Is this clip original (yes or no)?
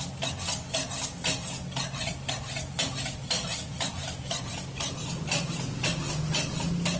yes